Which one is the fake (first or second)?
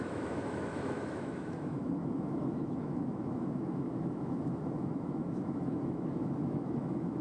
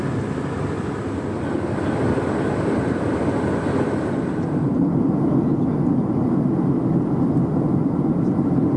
first